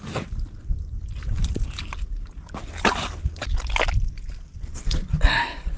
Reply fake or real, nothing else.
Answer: real